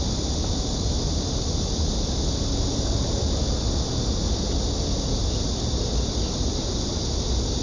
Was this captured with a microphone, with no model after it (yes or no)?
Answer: yes